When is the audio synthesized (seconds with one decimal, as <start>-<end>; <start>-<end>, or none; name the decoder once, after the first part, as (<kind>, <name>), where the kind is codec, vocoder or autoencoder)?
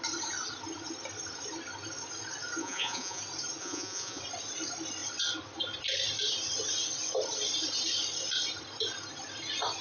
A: 2.6-3.2 (vocoder, Vocos); 3.6-4.2